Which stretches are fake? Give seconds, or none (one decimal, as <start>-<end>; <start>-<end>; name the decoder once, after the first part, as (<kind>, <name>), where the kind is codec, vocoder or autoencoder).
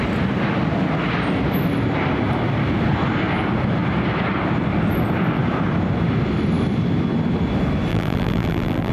7.9-8.9 (vocoder, BigVGAN v2)